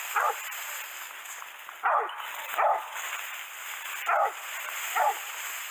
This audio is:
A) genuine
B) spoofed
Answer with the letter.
A